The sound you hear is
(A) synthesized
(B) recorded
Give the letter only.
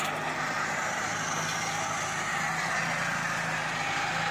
B